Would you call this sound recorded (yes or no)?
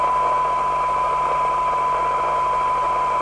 yes